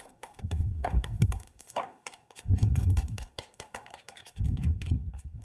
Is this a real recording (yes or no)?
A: no